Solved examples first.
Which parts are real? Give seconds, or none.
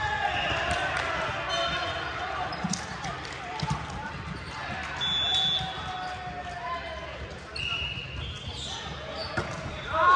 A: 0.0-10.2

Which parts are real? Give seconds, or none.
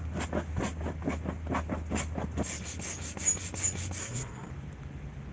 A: 0.0-4.0; 4.5-5.3